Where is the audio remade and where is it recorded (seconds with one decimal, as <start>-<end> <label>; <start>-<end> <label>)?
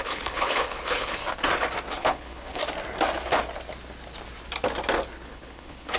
0.0-1.2 remade; 1.2-1.9 recorded; 1.9-2.6 remade; 2.6-5.1 recorded; 5.1-6.0 remade